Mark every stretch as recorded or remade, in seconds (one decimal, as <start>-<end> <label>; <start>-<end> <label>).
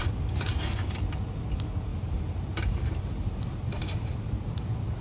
0.0-1.9 recorded; 1.9-4.3 remade; 4.3-5.0 recorded